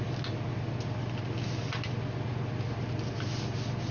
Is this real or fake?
real